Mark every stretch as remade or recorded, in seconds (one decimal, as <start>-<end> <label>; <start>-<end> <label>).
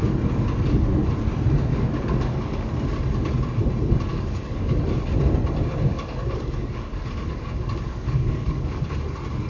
0.0-1.7 recorded; 1.7-2.7 remade; 2.7-4.1 recorded; 4.1-4.8 remade; 4.8-5.9 recorded; 5.9-8.8 remade; 8.8-9.5 recorded